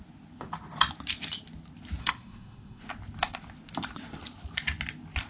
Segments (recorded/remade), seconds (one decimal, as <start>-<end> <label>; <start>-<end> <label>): 0.0-2.0 recorded; 2.0-2.8 remade; 2.8-5.3 recorded